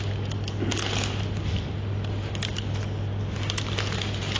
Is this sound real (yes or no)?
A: yes